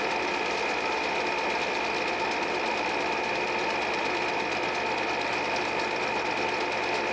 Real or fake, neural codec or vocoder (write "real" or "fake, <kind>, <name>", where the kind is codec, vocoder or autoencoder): real